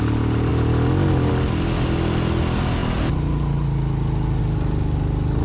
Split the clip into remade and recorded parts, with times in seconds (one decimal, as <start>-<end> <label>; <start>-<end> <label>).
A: 0.0-5.4 recorded